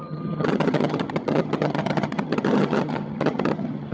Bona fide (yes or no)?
no